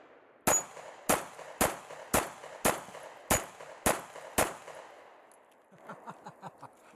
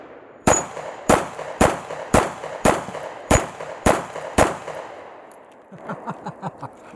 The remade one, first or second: second